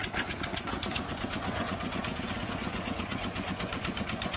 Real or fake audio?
fake